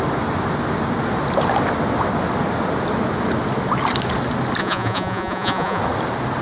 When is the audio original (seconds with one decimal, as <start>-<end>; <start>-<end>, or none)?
0.0-4.6; 5.8-6.4